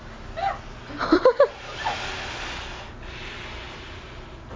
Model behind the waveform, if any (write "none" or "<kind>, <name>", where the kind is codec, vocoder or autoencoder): none